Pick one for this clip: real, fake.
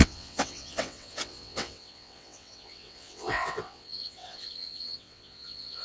fake